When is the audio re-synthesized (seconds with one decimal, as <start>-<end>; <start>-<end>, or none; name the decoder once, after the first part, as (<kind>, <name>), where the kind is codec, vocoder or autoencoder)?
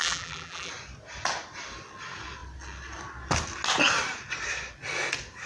0.0-0.7 (vocoder, BigVGAN v2)